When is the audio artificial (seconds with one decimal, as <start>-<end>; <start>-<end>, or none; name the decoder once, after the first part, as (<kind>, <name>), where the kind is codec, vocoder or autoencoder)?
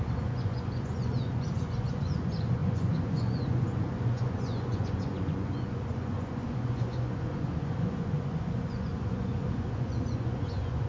0.0-10.9 (vocoder, Vocos)